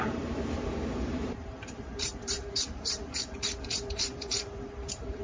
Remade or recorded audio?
remade